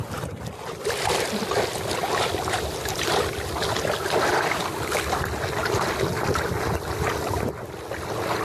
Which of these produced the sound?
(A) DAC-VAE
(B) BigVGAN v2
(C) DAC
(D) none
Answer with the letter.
D